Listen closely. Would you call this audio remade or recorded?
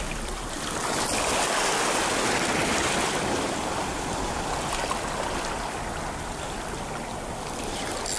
recorded